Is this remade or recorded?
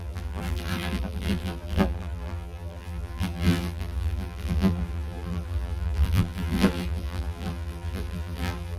remade